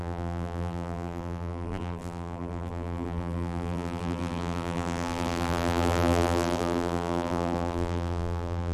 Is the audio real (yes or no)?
no